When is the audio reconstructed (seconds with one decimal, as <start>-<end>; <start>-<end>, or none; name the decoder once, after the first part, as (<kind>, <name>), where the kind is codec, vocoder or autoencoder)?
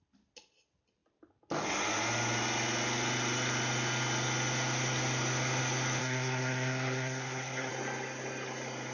6.0-7.7 (codec, SNAC)